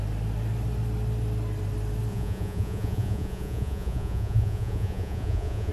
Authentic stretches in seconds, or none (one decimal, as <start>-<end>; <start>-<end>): 0.0-2.1